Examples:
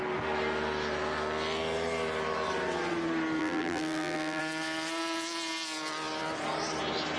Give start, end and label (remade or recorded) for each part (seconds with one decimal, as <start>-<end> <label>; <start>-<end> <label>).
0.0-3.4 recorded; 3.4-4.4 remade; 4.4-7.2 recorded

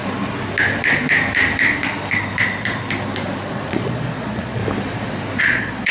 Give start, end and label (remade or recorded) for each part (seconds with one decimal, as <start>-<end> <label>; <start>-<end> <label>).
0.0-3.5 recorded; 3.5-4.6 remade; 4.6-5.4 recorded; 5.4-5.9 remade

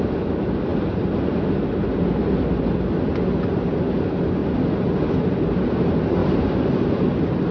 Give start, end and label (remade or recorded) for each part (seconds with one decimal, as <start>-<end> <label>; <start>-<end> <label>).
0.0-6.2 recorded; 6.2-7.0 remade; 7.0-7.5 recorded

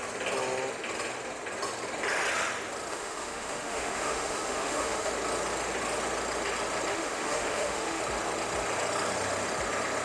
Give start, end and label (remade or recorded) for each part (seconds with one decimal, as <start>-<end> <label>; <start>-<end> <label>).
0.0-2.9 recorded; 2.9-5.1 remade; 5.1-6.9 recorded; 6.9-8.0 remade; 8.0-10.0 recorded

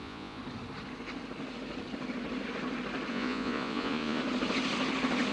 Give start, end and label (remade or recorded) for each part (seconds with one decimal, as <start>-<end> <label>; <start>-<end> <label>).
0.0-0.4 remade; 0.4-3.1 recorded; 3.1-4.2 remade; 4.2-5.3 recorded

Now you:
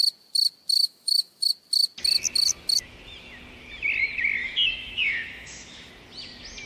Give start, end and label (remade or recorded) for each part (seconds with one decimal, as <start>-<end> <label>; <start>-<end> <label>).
0.0-0.8 recorded; 0.8-1.5 remade; 1.5-4.4 recorded; 4.4-5.9 remade; 5.9-6.7 recorded